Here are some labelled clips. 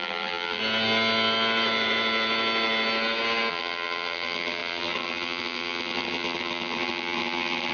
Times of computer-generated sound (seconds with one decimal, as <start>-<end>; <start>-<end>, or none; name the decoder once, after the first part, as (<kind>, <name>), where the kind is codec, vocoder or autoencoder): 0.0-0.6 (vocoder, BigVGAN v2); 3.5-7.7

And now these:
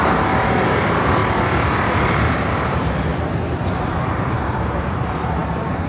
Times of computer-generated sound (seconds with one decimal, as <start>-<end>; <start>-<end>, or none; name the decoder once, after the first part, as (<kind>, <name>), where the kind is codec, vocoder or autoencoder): 0.0-1.2 (vocoder, BigVGAN v2); 2.0-3.1; 3.7-5.9

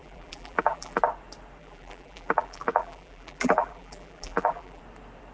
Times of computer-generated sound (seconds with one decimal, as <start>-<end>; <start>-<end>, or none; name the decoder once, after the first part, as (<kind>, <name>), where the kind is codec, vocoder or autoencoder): 0.0-1.0 (vocoder, BigVGAN v2); 1.6-4.8

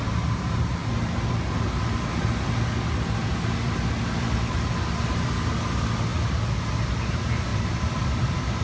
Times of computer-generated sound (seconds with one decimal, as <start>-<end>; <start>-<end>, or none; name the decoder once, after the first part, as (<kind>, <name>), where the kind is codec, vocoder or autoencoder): 6.1-6.9 (vocoder, BigVGAN v2); 7.5-8.6

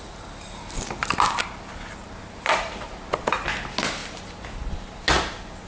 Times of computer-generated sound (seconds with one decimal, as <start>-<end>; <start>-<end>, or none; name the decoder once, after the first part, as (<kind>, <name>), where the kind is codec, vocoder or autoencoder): 1.4-3.4 (vocoder, BigVGAN v2)

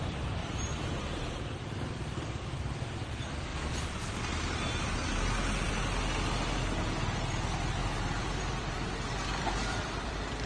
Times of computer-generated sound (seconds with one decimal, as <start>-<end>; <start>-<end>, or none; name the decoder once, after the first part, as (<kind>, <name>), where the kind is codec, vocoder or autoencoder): 0.4-1.4 (vocoder, BigVGAN v2); 7.8-8.9; 9.3-10.5